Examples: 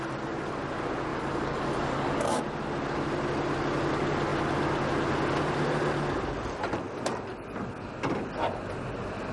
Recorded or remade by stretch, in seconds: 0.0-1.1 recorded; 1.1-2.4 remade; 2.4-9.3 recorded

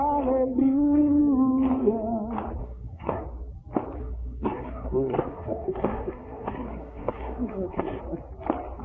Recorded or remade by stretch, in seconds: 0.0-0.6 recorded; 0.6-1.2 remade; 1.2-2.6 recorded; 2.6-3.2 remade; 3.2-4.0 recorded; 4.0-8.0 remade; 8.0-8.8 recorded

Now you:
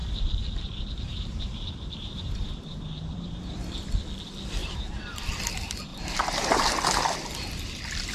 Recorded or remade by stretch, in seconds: 0.0-3.5 remade; 3.5-4.6 recorded; 4.6-5.3 remade; 5.3-5.9 recorded; 5.9-6.7 remade; 6.7-8.1 recorded

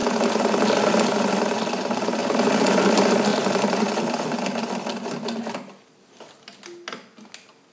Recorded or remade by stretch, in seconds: 0.0-3.3 recorded; 3.3-4.4 remade; 4.4-7.7 recorded

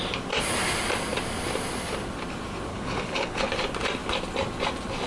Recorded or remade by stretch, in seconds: 0.0-2.7 recorded; 2.7-3.5 remade; 3.5-5.1 recorded

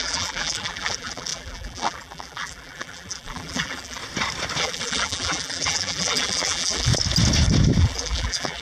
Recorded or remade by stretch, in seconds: 0.0-4.0 remade; 4.0-4.6 recorded; 4.6-6.9 remade; 6.9-7.8 recorded; 7.8-8.6 remade

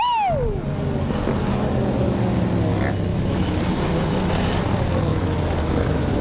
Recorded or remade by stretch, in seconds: 0.0-3.1 recorded; 3.1-3.6 remade; 3.6-5.1 recorded; 5.1-6.2 remade